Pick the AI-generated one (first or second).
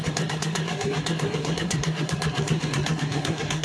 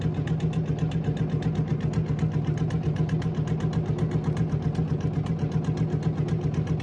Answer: first